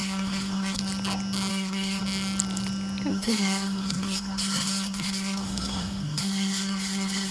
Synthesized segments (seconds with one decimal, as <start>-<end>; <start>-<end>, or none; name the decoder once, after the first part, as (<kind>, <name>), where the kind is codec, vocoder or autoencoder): 0.0-0.8 (codec, SNAC); 1.5-2.0; 3.1-7.3